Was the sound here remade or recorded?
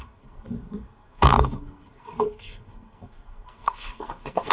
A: remade